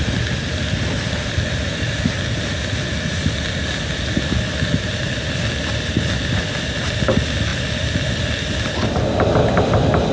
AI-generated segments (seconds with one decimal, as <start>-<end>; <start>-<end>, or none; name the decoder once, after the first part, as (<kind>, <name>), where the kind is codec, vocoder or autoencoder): none